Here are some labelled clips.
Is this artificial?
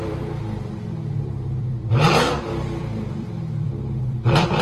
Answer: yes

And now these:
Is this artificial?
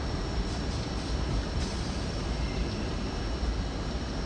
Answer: no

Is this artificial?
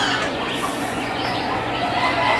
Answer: yes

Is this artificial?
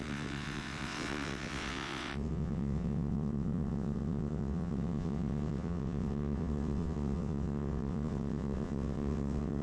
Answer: yes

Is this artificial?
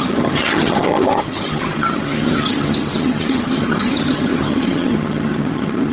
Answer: yes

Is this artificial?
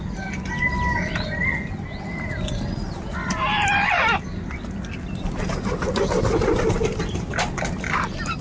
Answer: no